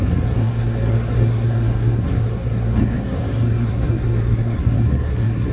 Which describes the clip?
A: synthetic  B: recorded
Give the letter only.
A